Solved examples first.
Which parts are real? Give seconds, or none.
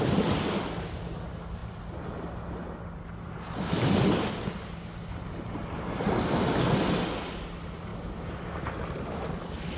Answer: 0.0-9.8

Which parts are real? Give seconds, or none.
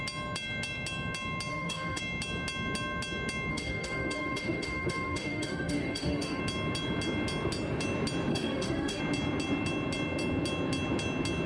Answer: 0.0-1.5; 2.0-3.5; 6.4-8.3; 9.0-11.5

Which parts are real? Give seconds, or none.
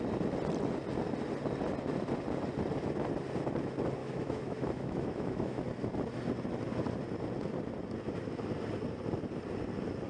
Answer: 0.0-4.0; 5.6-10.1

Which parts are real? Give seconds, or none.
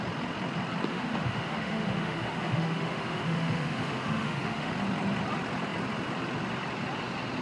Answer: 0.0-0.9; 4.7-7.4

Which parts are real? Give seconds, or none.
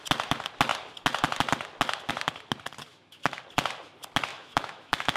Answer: 0.0-2.9; 3.4-4.3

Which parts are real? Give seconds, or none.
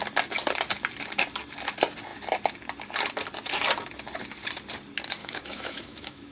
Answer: 0.0-5.2